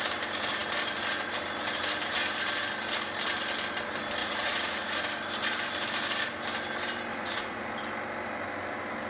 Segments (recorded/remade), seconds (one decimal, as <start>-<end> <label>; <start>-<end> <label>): 0.0-4.2 recorded; 4.2-5.0 remade; 5.0-7.1 recorded; 7.1-7.7 remade; 7.7-9.1 recorded